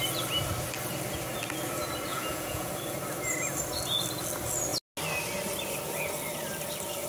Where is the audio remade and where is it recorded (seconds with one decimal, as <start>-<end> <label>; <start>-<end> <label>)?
0.0-2.1 recorded; 2.1-2.7 remade; 2.7-7.1 recorded